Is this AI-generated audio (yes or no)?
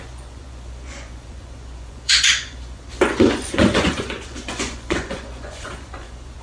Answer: yes